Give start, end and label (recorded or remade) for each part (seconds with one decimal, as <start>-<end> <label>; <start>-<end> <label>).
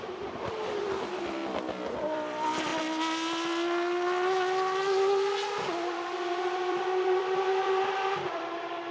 0.0-1.4 remade; 1.4-2.0 recorded; 2.0-2.7 remade; 2.7-6.2 recorded; 6.2-8.9 remade